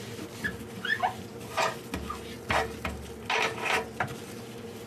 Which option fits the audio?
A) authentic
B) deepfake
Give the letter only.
A